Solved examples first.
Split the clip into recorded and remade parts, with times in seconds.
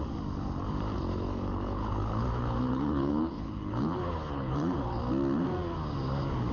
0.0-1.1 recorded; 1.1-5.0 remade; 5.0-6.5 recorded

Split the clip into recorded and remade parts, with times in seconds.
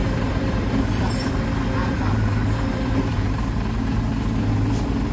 0.0-1.3 remade; 1.3-1.8 recorded; 1.8-4.0 remade; 4.0-5.1 recorded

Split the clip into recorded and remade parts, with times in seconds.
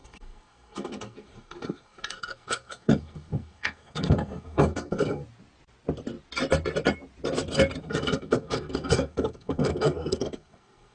0.0-5.2 remade; 5.2-7.8 recorded; 7.8-10.9 remade